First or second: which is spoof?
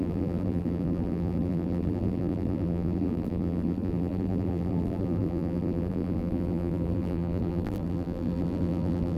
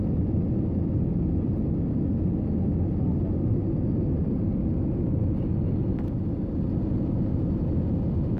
first